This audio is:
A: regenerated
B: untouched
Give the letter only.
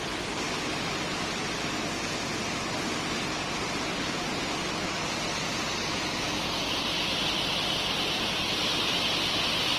B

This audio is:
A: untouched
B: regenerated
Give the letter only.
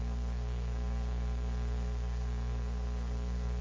B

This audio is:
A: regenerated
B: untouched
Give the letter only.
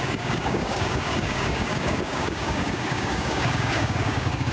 A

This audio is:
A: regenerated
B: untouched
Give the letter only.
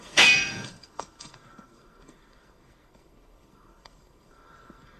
A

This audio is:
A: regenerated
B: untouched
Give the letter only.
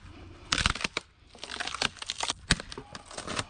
B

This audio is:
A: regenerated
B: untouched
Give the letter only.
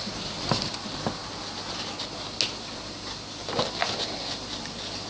B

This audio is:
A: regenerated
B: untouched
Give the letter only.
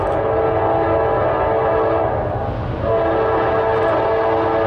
B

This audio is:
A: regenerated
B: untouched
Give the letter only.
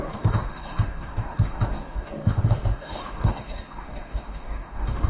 A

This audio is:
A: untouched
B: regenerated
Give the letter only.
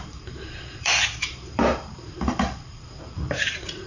B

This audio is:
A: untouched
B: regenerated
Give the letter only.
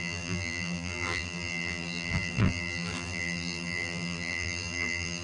B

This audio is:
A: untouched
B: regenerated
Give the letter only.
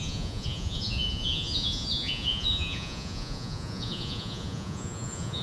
B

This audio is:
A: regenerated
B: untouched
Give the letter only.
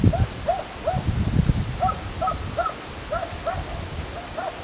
B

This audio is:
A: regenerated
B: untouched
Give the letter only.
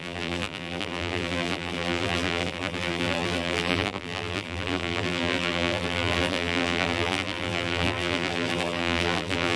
A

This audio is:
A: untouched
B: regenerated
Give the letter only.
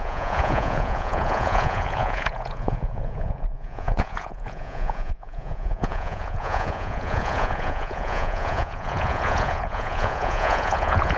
B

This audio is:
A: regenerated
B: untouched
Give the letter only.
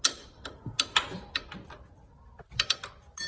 B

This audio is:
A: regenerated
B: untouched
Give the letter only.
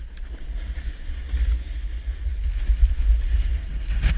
B